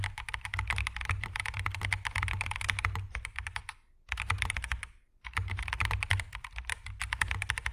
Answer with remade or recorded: recorded